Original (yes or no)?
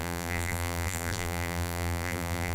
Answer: no